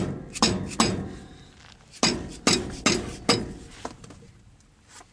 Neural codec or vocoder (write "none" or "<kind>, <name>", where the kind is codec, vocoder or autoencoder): none